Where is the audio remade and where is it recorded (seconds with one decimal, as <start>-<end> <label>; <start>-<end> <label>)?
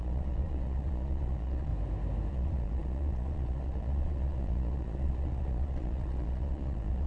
0.0-1.7 remade; 1.7-2.3 recorded; 2.3-7.1 remade